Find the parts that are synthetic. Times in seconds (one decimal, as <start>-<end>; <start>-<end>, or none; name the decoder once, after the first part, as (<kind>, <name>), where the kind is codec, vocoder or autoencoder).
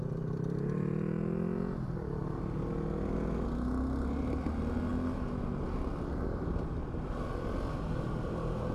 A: none